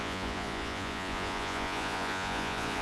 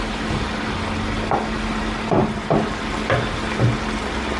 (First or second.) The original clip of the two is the second